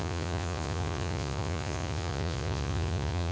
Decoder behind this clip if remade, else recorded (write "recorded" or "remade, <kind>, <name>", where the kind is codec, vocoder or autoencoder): remade, vocoder, Vocos